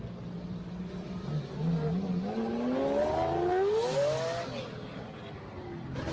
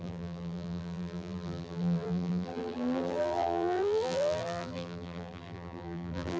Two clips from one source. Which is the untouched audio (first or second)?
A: first